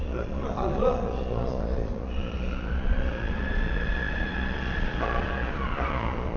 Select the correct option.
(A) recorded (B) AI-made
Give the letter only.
B